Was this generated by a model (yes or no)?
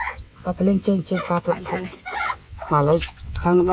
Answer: yes